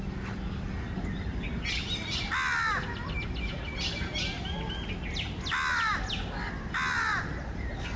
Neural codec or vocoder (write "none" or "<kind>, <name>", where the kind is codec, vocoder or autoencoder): none